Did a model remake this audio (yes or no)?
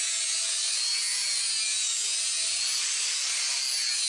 no